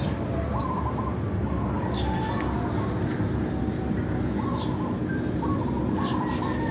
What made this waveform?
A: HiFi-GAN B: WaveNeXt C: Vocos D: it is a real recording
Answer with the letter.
D